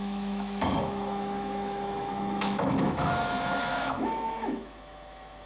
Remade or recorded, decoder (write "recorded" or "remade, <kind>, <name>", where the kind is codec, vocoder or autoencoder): remade, autoencoder, DAC-VAE